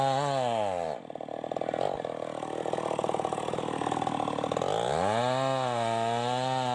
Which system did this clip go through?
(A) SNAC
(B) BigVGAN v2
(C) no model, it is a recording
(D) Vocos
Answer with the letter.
C